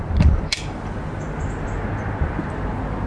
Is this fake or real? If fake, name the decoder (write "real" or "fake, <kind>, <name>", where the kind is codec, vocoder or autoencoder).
real